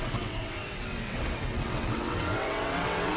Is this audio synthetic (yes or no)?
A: yes